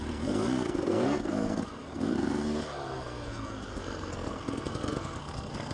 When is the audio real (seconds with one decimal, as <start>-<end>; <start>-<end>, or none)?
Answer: none